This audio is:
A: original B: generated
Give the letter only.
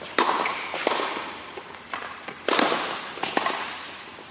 B